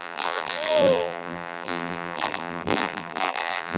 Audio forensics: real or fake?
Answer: fake